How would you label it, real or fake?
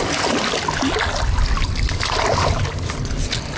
real